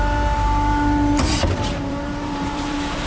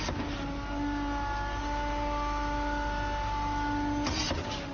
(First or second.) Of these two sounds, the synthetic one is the first